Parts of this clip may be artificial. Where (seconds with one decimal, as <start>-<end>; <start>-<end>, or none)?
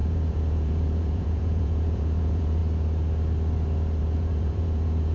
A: 0.0-2.6; 4.0-5.1